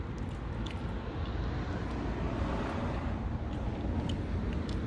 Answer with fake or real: real